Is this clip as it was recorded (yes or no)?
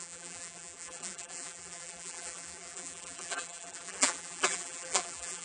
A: no